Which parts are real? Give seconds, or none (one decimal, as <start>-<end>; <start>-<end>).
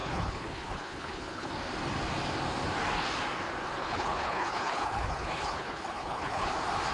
1.5-3.8; 6.5-6.9